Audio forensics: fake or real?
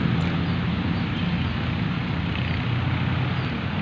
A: real